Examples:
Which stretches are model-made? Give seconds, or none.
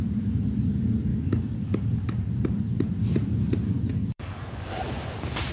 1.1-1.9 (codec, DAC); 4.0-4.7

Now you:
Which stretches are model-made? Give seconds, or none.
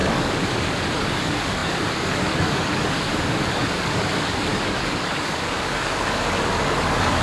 0.0-7.2 (codec, DAC)